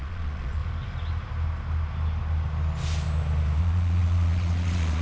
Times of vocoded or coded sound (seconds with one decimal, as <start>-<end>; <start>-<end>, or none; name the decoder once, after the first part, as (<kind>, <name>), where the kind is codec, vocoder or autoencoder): 0.0-0.6 (vocoder, Vocos); 3.6-5.0